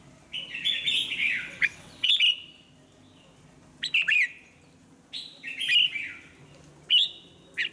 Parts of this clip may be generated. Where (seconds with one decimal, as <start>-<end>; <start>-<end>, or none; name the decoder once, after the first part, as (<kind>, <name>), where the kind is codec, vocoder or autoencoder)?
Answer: 1.2-2.1 (vocoder, WaveNeXt)